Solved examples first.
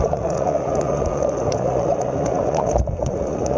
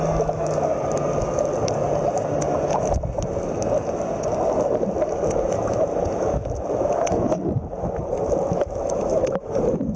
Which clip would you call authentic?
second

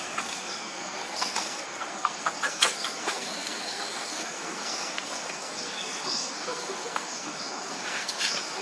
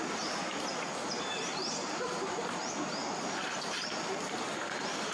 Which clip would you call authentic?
second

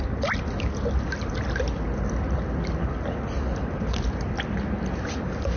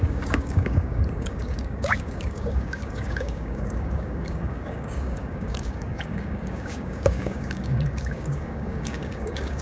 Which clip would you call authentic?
first